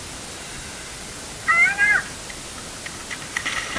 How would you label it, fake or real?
real